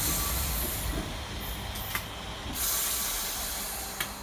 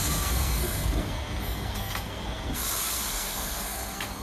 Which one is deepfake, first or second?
second